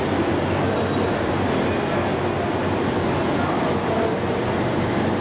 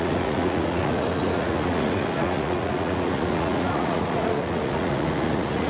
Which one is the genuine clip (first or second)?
first